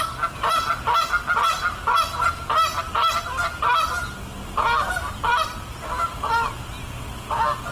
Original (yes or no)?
yes